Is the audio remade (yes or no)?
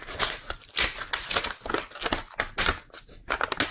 no